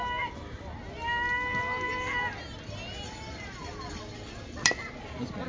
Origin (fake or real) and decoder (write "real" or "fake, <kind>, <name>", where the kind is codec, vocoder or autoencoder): real